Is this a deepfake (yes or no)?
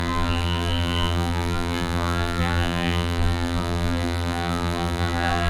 yes